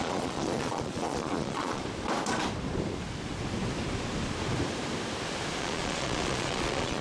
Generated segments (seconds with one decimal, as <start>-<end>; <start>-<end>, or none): 0.0-1.8; 5.6-7.0